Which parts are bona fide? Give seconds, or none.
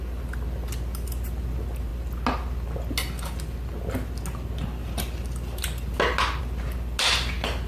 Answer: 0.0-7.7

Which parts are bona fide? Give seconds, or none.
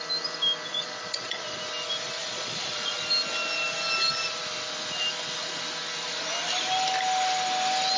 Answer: 0.0-0.7; 1.6-2.2; 3.0-8.0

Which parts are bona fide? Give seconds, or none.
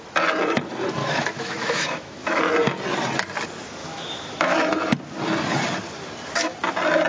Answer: 0.0-1.0; 2.4-3.8; 4.7-7.1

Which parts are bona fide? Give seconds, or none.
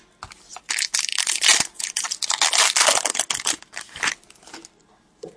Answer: 0.0-5.4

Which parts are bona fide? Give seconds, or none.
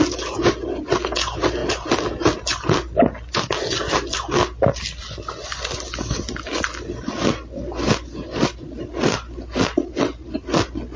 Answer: 0.0-11.0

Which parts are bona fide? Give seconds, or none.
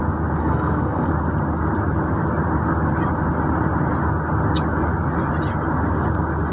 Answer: 0.0-0.4; 1.1-6.5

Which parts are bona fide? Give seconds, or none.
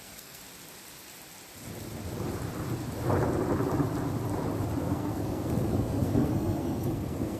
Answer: 0.4-4.8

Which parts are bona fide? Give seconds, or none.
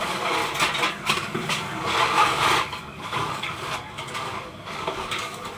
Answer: 0.4-0.9